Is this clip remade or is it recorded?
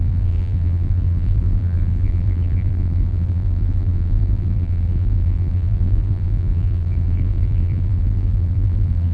remade